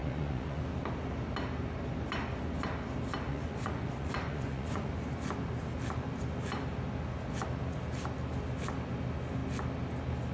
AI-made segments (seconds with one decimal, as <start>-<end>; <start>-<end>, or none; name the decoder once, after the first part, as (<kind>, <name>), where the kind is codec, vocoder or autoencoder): 0.0-0.6 (vocoder, Vocos); 3.3-4.9